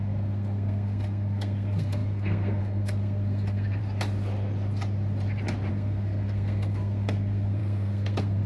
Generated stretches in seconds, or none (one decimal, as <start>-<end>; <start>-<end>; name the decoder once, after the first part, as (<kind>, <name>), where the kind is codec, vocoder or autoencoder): 0.0-3.8 (codec, SNAC); 5.7-8.5